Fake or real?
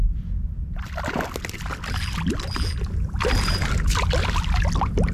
real